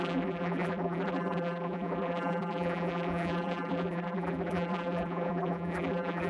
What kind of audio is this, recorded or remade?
remade